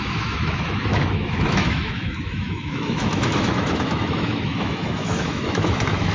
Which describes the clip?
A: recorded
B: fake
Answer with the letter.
B